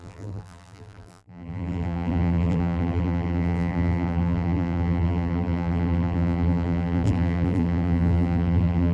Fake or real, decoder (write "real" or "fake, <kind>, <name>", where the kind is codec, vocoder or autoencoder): fake, vocoder, BigVGAN v2